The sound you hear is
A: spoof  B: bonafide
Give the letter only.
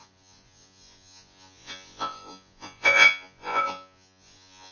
A